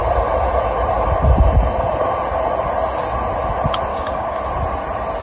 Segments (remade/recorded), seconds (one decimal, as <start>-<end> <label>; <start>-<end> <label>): 0.0-3.9 recorded; 3.9-4.4 remade; 4.4-5.2 recorded